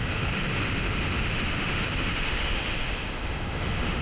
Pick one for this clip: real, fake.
fake